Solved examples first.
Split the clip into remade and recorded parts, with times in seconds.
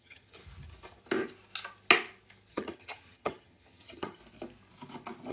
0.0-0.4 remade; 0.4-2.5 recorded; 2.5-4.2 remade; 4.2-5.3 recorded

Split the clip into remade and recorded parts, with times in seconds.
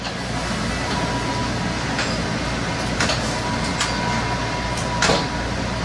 0.0-5.8 recorded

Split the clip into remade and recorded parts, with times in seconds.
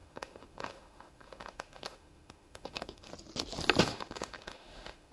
0.0-3.1 remade; 3.1-3.8 recorded; 3.8-5.1 remade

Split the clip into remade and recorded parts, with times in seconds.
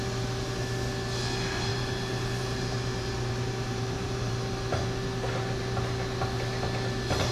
0.0-1.7 recorded; 1.7-4.3 remade; 4.3-7.3 recorded